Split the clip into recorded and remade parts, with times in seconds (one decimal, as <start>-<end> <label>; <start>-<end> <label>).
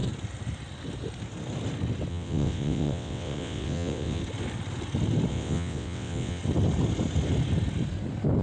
0.0-2.1 recorded; 2.1-4.2 remade; 4.2-5.3 recorded; 5.3-6.4 remade; 6.4-8.4 recorded